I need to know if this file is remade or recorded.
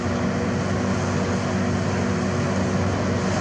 recorded